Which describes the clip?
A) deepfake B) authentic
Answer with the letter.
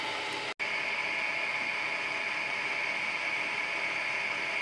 B